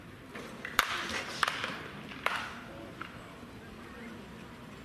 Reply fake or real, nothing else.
real